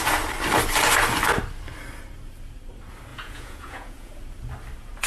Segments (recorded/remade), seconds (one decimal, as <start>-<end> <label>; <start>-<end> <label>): 0.0-3.1 recorded; 3.1-4.1 remade; 4.1-5.1 recorded